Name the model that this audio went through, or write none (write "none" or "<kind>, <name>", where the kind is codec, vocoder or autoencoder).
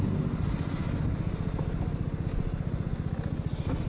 none